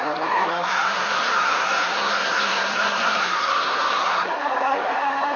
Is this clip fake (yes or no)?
yes